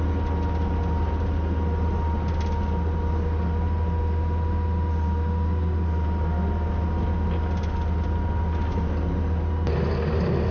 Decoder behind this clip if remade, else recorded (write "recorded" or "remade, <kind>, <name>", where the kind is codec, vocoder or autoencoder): recorded